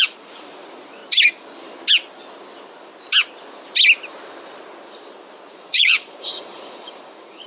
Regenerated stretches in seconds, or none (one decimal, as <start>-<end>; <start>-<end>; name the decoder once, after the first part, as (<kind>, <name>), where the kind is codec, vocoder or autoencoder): 0.0-1.0 (vocoder, Vocos); 5.5-7.5